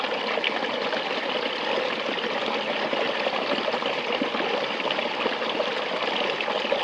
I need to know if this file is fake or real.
fake